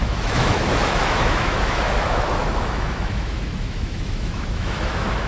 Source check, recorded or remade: remade